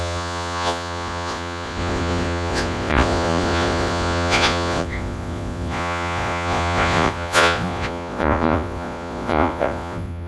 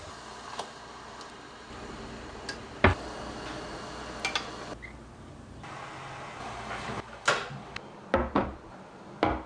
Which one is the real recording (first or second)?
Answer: second